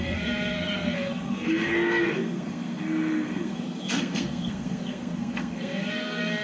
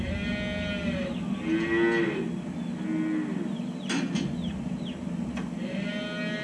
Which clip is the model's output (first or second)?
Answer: first